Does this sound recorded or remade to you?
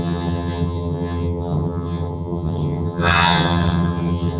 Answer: remade